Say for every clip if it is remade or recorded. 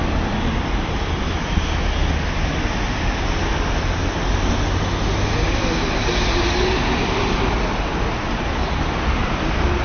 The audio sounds recorded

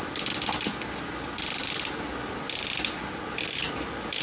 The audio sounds recorded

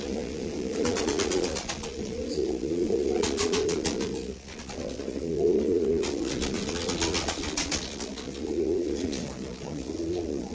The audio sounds remade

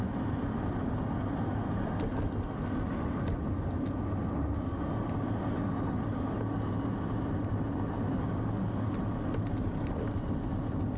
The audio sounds recorded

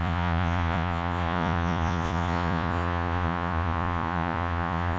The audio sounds remade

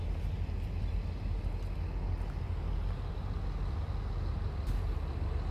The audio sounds recorded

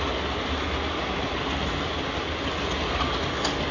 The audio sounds recorded